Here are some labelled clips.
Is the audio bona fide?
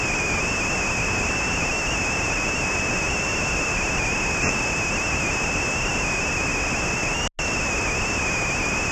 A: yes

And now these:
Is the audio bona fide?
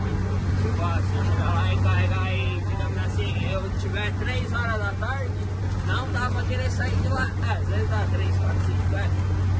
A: yes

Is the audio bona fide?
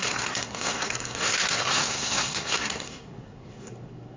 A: no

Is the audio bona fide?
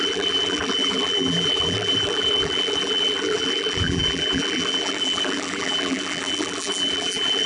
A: no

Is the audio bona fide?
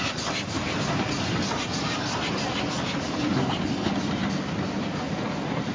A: yes